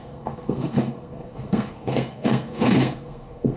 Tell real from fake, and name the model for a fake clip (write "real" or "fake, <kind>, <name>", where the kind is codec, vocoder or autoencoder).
fake, codec, SNAC